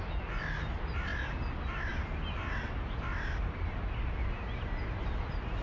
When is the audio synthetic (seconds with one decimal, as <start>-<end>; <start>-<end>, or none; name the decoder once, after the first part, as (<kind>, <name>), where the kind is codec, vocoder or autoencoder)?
none